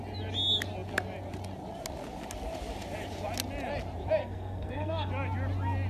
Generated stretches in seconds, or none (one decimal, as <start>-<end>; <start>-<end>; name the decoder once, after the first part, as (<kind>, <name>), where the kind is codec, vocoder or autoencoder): 4.2-5.1 (codec, SNAC)